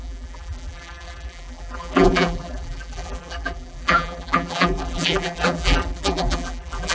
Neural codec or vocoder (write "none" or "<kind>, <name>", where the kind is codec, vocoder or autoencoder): vocoder, BigVGAN v2